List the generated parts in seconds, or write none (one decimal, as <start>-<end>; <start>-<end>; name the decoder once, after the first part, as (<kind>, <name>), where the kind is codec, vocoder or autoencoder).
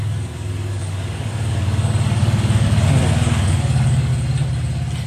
0.0-4.1 (codec, DAC)